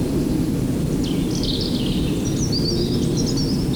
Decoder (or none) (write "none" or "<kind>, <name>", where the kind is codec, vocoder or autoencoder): none